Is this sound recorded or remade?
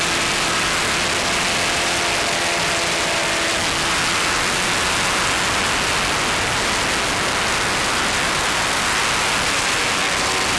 recorded